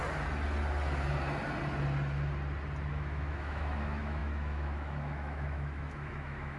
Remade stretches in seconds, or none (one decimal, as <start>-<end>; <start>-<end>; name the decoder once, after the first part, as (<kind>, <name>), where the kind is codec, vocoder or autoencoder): 2.9-6.6 (autoencoder, DAC-VAE)